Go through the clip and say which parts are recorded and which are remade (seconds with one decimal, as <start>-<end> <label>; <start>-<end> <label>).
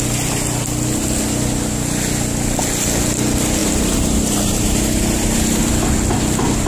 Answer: 0.0-3.6 recorded; 3.6-5.7 remade; 5.7-6.7 recorded